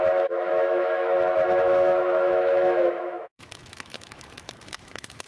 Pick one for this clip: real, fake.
fake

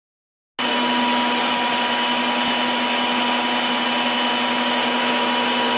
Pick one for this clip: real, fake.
real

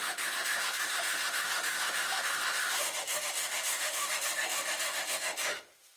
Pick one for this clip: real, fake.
fake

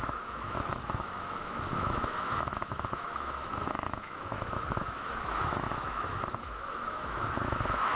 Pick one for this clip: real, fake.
fake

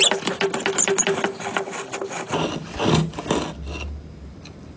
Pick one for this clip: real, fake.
real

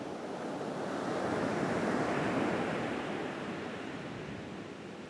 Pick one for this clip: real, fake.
real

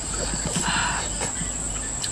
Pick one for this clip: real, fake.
real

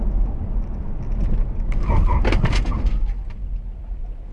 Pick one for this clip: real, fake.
real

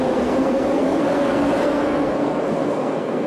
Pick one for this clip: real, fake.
fake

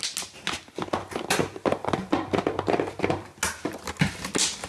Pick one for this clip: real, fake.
real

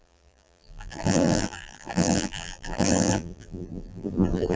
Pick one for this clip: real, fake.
fake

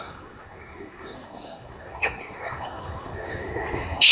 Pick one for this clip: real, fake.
fake